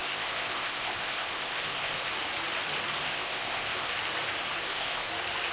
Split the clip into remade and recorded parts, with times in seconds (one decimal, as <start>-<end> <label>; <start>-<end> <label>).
0.0-2.1 remade; 2.1-3.0 recorded; 3.0-3.9 remade; 3.9-4.6 recorded; 4.6-5.1 remade; 5.1-5.5 recorded